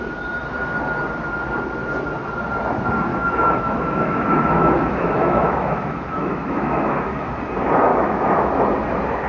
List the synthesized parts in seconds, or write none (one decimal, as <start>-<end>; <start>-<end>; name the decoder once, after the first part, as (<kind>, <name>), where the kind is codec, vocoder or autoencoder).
3.1-7.3 (autoencoder, DAC-VAE); 7.9-8.5